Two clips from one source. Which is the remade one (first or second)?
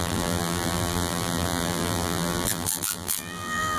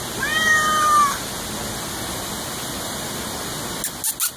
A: first